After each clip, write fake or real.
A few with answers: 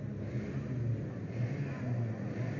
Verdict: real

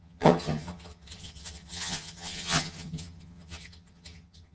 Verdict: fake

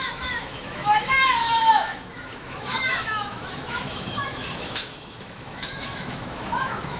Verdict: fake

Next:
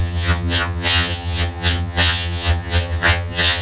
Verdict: fake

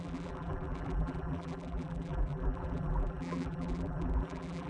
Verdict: fake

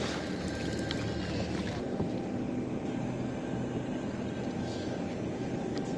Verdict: real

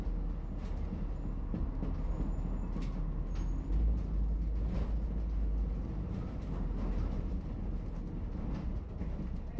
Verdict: real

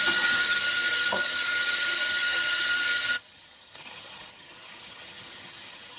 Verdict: fake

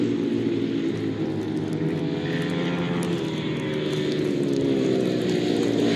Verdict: real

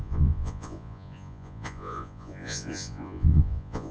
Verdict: fake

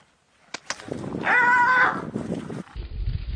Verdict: real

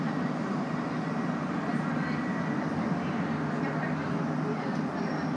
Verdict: real